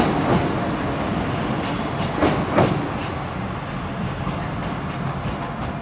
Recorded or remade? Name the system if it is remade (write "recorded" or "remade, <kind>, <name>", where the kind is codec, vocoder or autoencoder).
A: recorded